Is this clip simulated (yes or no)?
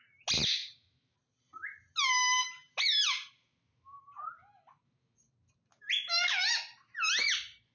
no